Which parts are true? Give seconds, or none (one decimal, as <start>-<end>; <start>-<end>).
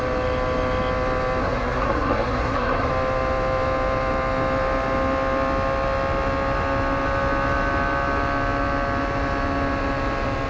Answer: 0.0-1.4; 2.9-10.5